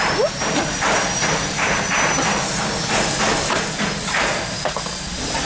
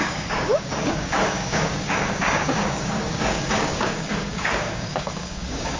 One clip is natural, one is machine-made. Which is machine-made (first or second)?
second